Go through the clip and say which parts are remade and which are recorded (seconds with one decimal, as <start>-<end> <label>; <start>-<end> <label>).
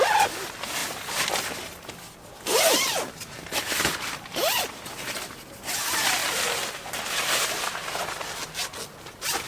0.0-9.5 recorded